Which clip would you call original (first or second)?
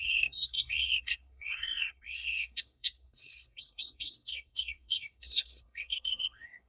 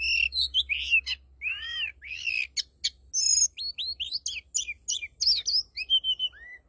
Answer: second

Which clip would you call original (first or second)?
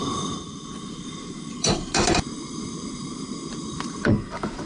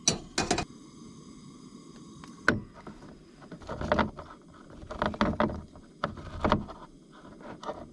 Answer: second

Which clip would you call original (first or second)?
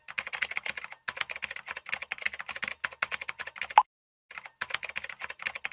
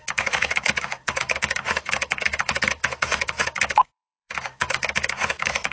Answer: first